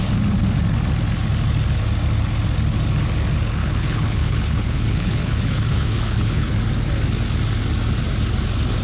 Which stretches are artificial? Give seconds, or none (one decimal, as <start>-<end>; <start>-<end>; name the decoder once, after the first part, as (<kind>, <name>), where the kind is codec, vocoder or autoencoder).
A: 3.6-6.5 (codec, HILCodec)